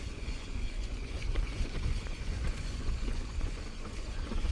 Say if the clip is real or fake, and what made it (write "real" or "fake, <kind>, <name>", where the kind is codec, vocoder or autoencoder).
fake, vocoder, Vocos